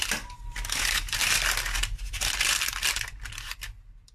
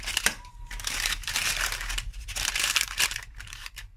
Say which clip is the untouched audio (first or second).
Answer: first